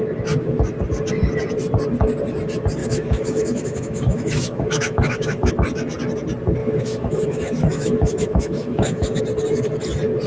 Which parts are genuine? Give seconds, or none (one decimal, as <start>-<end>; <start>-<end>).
0.0-2.8; 5.5-6.6; 9.2-10.3